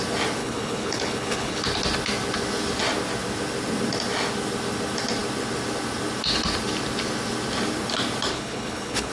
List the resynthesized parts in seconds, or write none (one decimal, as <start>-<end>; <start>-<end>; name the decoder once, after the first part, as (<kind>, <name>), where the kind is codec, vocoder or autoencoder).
0.4-1.6 (codec, HILCodec); 8.3-9.1